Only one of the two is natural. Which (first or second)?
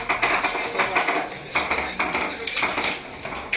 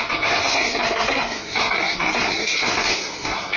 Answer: first